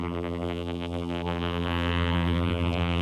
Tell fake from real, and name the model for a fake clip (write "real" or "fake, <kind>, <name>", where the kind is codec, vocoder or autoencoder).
fake, vocoder, BigVGAN v2